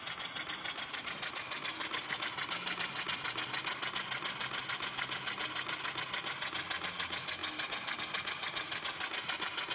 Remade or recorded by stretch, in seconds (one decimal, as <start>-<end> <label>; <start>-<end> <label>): 0.0-9.7 recorded